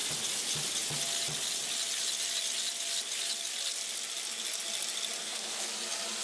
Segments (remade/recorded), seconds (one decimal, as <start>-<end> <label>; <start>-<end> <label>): 0.0-5.2 recorded; 5.2-5.7 remade; 5.7-6.2 recorded